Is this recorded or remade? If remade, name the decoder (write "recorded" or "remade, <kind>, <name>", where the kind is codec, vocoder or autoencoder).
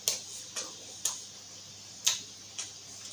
recorded